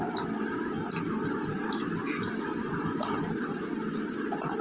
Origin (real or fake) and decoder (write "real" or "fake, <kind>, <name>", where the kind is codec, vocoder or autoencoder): real